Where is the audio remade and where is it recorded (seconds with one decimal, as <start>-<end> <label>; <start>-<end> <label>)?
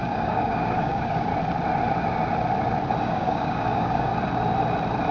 0.0-1.3 remade; 1.3-3.1 recorded; 3.1-4.1 remade; 4.1-5.1 recorded